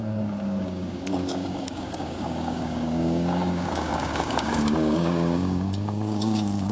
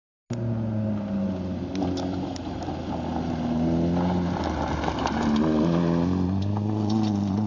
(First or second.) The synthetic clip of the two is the first